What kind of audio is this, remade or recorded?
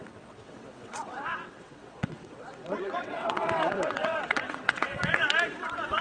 remade